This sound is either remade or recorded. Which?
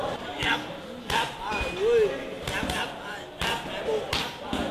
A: recorded